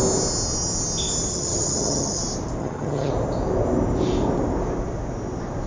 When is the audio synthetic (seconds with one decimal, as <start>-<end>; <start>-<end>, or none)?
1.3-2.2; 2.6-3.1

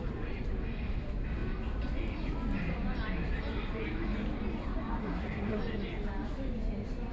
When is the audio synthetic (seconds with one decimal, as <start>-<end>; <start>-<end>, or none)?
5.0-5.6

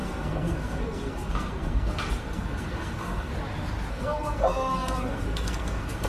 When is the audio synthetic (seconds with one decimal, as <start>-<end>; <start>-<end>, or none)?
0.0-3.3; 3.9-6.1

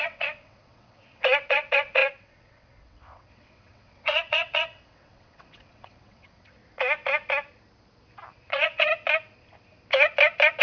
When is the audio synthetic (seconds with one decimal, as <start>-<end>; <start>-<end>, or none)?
0.0-6.6; 8.3-8.9